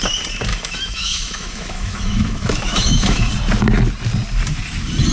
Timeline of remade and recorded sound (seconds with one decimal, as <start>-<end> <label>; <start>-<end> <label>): 0.0-0.5 recorded; 0.5-3.3 remade; 3.3-5.1 recorded